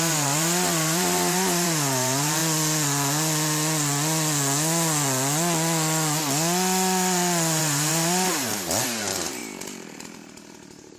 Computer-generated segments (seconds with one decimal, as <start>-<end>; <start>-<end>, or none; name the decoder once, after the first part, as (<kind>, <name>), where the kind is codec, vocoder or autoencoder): 0.0-2.4 (vocoder, BigVGAN v2); 7.6-9.4; 10.5-11.0